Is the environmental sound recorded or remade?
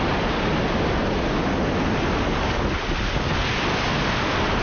recorded